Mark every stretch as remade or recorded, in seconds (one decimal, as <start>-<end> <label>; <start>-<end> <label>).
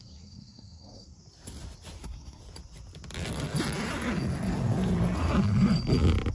0.0-1.2 remade; 1.2-2.0 recorded; 2.0-2.4 remade; 2.4-6.3 recorded